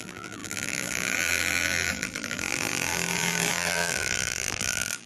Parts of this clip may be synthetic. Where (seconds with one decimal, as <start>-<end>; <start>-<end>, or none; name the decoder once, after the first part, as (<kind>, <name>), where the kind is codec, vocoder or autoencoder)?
0.0-5.1 (vocoder, BigVGAN v2)